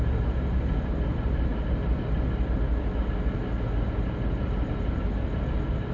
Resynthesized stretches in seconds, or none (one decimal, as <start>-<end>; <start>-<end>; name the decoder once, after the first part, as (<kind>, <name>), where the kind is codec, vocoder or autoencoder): none

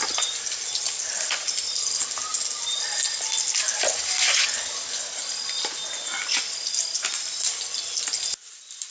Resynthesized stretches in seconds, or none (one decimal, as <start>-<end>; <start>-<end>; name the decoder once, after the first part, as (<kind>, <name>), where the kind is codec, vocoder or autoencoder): none

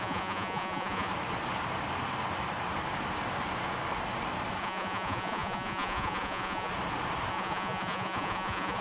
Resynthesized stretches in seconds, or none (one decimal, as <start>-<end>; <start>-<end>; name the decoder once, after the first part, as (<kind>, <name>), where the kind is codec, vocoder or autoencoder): 0.0-1.1 (vocoder, Vocos); 4.6-6.7; 7.3-8.8

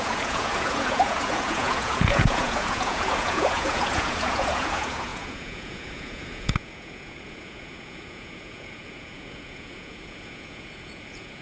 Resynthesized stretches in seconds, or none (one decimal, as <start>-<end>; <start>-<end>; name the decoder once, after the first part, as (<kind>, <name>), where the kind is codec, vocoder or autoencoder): 0.0-11.4 (vocoder, Vocos)

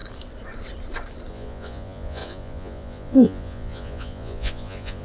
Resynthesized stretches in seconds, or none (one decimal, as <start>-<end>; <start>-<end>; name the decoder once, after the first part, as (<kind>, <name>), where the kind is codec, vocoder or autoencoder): 1.3-5.0 (vocoder, Vocos)

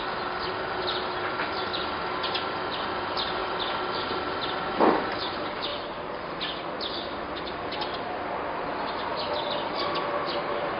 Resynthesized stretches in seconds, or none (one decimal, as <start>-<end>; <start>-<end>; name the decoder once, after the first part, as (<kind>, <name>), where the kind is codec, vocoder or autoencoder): none

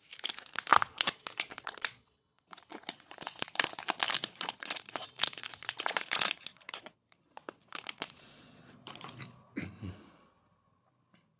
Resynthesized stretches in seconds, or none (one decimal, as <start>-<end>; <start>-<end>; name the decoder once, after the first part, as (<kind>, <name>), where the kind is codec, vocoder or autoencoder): 0.7-3.8 (vocoder, Vocos); 4.2-9.2

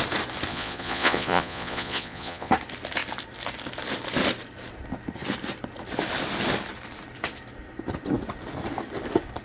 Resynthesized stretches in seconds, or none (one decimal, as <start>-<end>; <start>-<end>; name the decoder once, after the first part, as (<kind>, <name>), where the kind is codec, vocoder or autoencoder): 0.5-2.5 (vocoder, Vocos)